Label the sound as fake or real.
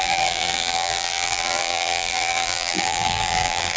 fake